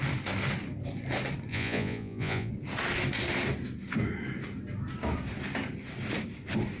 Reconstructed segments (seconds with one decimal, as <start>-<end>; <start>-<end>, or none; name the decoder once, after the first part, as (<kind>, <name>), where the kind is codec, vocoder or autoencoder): 1.5-2.5 (vocoder, Vocos)